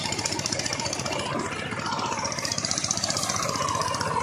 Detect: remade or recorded remade